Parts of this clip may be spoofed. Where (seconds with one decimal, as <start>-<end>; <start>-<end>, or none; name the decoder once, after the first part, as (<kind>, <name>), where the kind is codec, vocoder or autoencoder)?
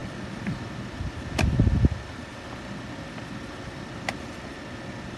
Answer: none